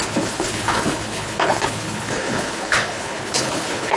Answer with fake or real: fake